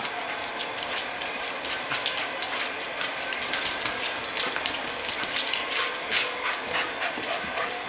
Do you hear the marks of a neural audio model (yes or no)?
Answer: no